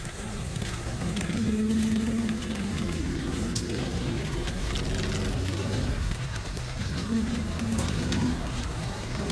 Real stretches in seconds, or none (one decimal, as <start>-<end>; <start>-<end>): 4.7-5.3